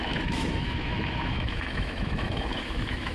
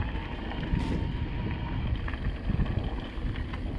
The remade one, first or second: first